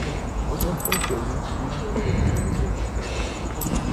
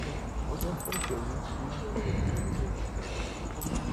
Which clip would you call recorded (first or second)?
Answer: second